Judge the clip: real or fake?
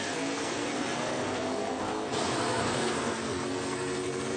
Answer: fake